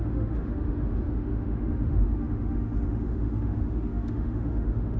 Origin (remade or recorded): remade